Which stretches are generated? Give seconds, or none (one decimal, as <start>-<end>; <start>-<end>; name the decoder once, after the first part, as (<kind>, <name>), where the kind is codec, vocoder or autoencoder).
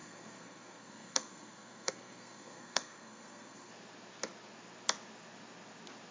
0.0-3.7 (codec, SNAC)